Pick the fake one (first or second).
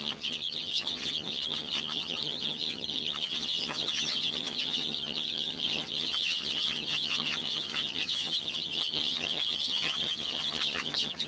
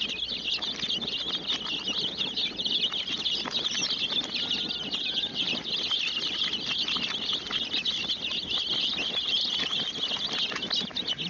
first